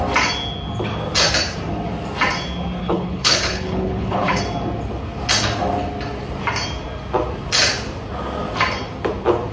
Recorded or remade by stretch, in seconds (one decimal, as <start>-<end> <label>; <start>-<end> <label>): 0.0-2.8 recorded; 2.8-4.4 remade; 4.4-9.5 recorded